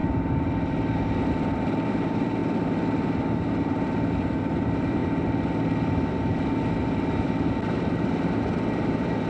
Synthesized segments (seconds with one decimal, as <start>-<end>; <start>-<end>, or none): 1.3-2.4; 3.6-5.0; 6.6-9.3